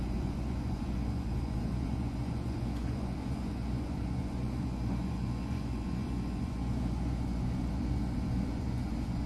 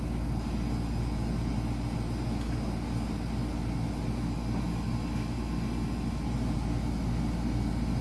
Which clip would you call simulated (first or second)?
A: first